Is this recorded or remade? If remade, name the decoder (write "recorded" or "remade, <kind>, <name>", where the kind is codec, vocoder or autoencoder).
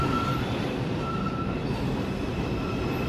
recorded